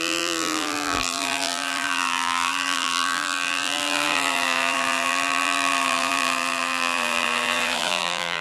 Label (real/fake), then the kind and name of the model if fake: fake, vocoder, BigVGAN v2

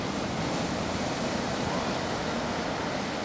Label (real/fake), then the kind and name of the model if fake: real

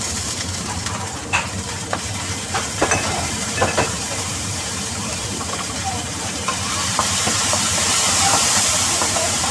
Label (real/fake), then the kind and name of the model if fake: fake, vocoder, BigVGAN v2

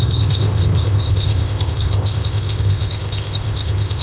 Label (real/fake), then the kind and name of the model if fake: fake, codec, ZipCodec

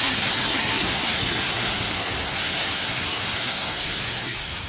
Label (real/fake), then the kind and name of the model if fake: fake, codec, SNAC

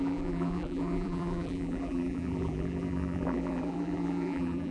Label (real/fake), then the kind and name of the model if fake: fake, vocoder, BigVGAN v2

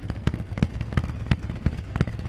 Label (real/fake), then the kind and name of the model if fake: fake, codec, SNAC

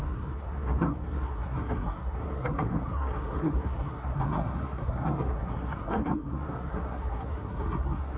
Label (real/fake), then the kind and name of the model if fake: fake, codec, SNAC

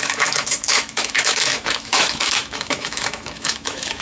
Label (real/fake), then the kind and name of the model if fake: fake, autoencoder, DAC-VAE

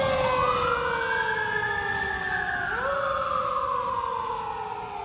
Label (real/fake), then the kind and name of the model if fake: real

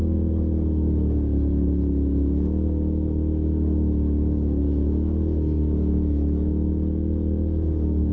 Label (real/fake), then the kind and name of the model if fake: real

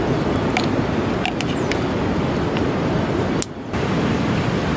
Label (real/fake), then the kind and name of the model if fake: real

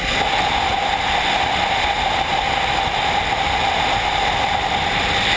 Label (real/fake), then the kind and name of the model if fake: real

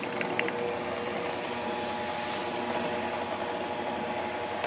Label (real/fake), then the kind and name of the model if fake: real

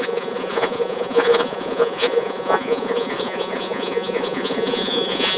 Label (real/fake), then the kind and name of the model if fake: fake, vocoder, Vocos